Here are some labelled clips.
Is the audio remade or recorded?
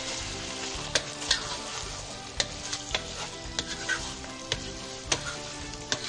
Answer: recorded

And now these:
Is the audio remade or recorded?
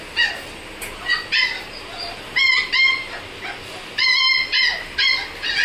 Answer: recorded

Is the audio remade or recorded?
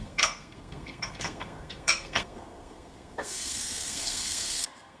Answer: remade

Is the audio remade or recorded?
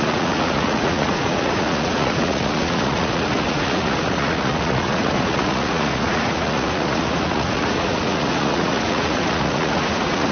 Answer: remade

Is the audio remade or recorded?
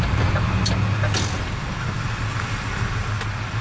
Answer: recorded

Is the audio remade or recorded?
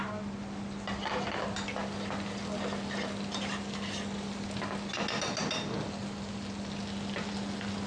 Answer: recorded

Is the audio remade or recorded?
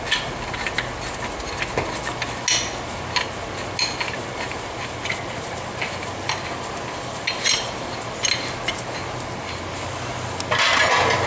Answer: recorded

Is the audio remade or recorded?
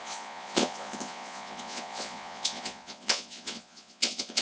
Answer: remade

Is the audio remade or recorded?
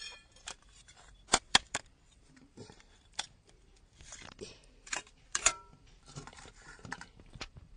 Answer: remade